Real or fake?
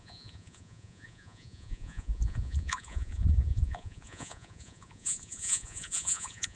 fake